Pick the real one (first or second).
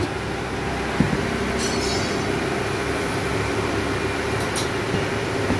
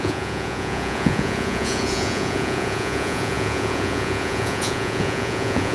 first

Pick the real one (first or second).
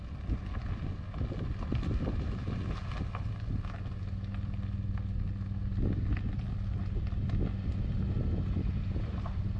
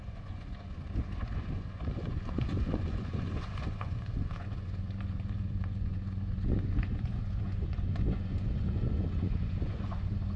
first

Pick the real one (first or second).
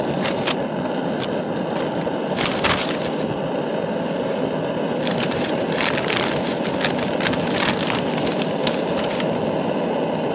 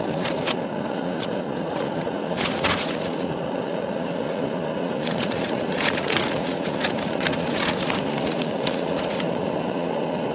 first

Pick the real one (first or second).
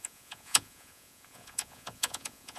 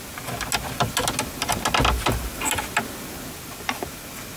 second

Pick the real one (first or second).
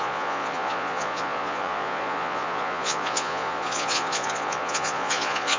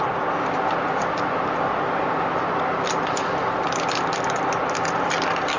second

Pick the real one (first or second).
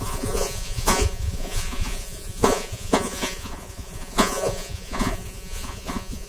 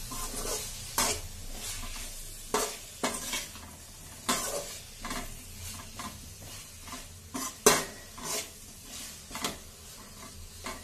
second